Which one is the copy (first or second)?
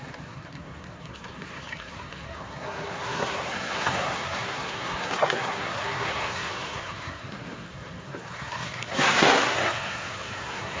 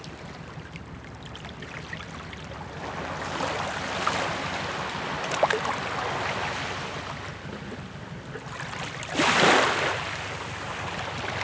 first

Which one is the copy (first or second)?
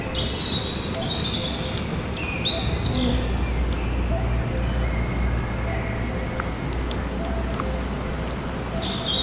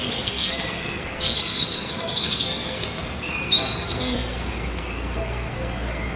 second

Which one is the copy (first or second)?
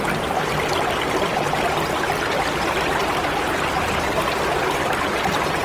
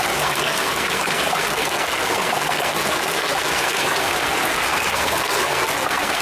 second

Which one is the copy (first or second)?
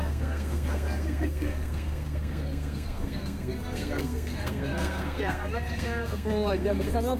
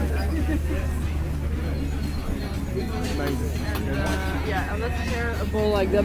first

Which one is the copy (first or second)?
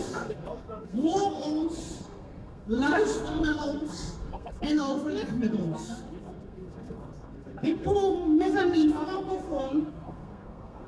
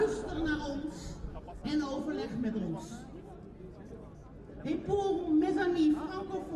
first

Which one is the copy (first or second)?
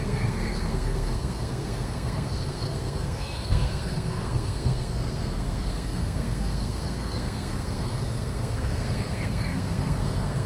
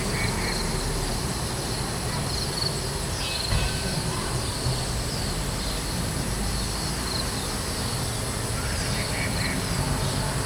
first